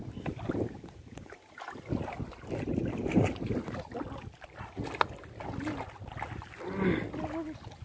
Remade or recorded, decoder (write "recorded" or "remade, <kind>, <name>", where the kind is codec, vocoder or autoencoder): recorded